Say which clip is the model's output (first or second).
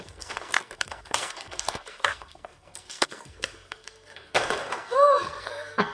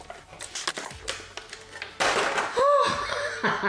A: first